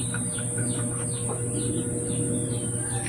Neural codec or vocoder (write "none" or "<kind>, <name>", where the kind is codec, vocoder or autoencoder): none